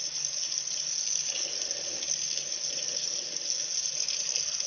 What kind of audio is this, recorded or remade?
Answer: recorded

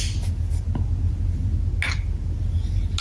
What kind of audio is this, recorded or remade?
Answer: recorded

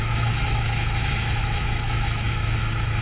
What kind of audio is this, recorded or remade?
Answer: remade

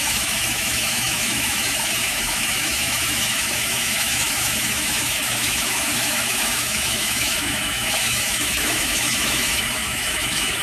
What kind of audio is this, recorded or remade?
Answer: remade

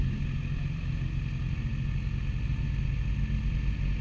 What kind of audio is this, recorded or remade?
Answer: recorded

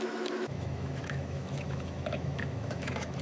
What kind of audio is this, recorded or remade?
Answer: remade